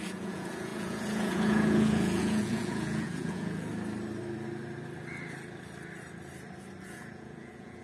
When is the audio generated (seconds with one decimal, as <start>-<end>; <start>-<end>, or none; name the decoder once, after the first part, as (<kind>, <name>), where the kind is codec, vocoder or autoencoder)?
0.0-3.7 (vocoder, Vocos); 6.8-7.8